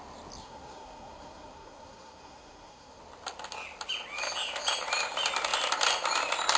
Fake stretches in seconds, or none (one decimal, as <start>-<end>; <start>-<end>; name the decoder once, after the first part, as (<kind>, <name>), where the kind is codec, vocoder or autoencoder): 0.4-3.0 (codec, SNAC)